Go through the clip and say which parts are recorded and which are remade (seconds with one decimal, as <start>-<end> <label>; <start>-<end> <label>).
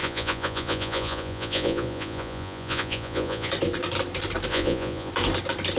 0.0-3.5 remade; 3.5-4.5 recorded; 4.5-5.1 remade; 5.1-5.8 recorded